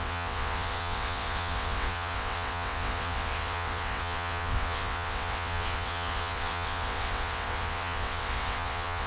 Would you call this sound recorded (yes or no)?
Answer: no